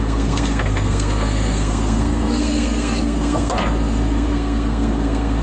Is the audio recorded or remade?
remade